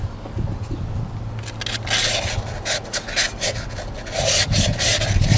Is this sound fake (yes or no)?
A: no